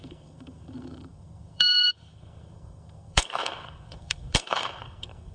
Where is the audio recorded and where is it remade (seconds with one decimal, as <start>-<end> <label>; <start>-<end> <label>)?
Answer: 0.0-5.3 remade

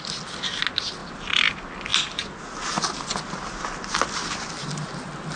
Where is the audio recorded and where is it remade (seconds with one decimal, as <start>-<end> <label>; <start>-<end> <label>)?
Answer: 0.0-1.0 recorded; 1.0-1.5 remade; 1.5-5.4 recorded

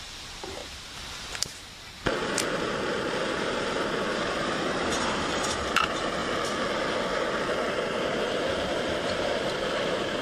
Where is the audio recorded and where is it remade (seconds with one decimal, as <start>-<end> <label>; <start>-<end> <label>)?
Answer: 0.0-0.6 remade; 0.6-1.3 recorded; 1.3-6.2 remade; 6.2-7.7 recorded; 7.7-10.2 remade

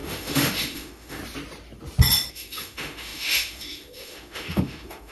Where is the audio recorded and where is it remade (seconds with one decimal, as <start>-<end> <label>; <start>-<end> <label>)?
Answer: 0.0-1.2 remade; 1.2-2.3 recorded; 2.3-5.1 remade

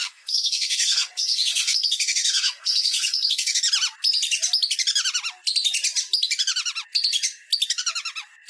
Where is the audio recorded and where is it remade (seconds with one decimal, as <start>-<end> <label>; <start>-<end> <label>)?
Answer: 0.0-3.6 remade; 3.6-8.5 recorded

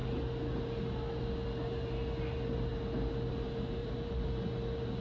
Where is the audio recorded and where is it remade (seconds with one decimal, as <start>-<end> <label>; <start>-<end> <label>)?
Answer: 0.0-3.8 recorded; 3.8-4.4 remade; 4.4-5.0 recorded

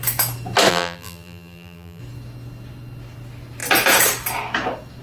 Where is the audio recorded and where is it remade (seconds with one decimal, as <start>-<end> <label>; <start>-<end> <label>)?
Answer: 0.0-0.7 recorded; 0.7-2.0 remade; 2.0-5.0 recorded